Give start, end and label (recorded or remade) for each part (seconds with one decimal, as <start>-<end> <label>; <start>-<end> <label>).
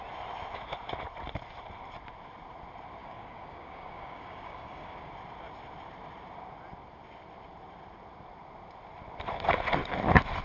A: 0.0-3.0 recorded; 3.0-5.1 remade; 5.1-10.4 recorded